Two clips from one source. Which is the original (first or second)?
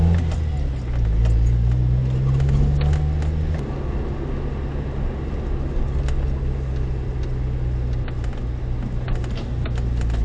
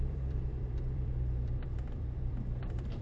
first